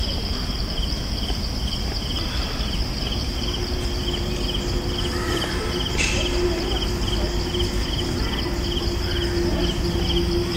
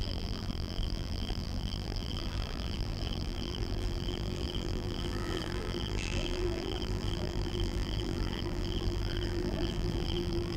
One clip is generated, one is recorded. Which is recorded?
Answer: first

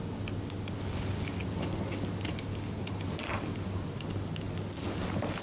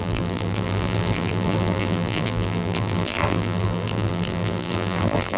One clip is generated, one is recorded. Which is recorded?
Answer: first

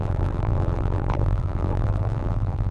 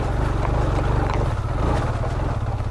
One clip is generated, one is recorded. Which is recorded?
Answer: second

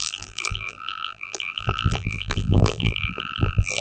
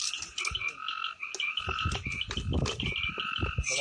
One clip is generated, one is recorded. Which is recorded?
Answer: second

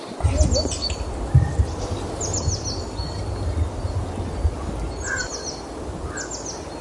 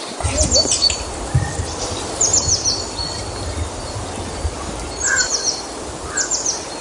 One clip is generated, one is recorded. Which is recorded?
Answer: first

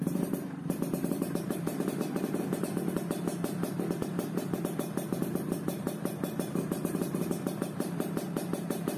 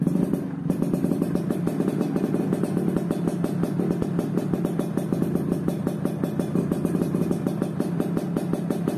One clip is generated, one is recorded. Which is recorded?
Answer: second